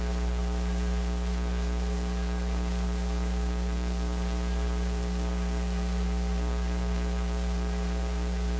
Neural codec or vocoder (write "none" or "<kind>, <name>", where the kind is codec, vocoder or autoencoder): codec, SNAC